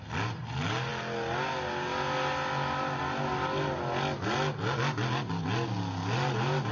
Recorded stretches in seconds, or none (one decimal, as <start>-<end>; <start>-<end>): 0.0-6.7